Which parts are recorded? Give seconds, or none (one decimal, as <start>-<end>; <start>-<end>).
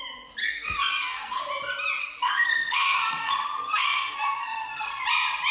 0.0-0.4; 1.4-2.0; 5.0-5.5